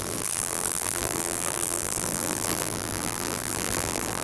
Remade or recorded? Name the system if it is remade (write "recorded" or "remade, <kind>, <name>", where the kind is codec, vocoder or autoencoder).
remade, vocoder, BigVGAN v2